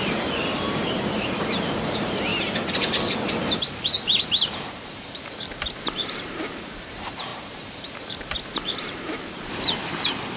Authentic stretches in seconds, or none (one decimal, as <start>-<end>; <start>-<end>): 2.3-3.3